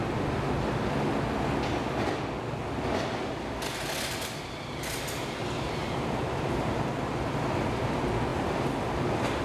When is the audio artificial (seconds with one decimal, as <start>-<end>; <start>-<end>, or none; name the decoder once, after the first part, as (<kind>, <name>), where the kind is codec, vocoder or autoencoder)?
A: 5.8-7.7 (vocoder, BigVGAN v2); 8.3-9.0